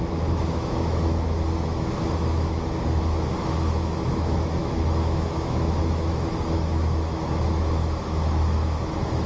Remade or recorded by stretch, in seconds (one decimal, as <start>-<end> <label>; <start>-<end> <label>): 0.0-9.3 remade